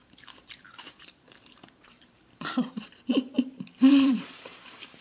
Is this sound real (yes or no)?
no